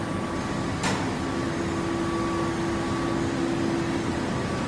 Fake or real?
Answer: real